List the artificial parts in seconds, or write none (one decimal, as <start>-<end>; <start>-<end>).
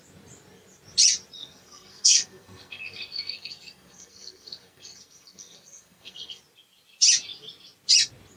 1.4-6.4